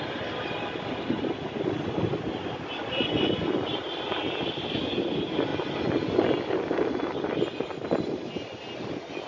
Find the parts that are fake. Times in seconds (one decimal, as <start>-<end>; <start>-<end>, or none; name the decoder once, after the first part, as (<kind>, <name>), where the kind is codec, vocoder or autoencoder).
none